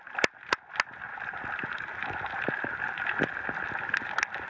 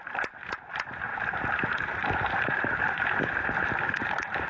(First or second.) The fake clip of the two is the second